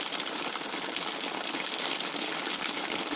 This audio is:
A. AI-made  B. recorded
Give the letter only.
B